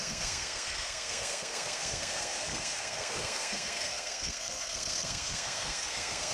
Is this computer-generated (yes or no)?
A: yes